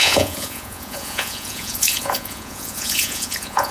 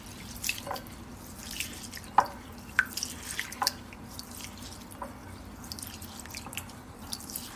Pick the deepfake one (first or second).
first